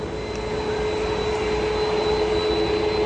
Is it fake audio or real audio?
real